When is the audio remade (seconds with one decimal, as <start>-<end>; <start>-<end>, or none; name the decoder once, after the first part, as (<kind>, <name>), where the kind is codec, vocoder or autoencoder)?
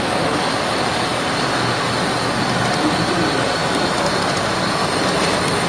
none